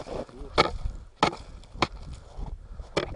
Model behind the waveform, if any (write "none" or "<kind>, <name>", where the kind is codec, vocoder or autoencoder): none